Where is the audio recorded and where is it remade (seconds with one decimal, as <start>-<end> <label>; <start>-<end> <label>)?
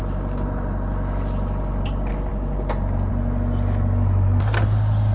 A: 0.0-5.1 recorded